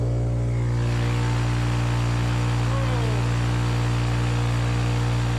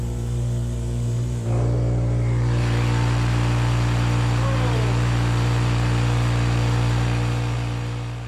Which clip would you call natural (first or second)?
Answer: first